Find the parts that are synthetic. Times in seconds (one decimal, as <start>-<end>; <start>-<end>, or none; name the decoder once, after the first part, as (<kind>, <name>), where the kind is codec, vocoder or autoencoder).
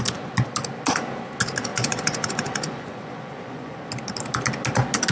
1.7-3.8 (vocoder, Vocos)